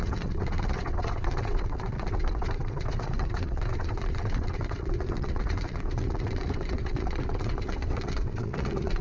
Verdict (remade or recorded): remade